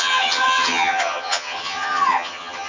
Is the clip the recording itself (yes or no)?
no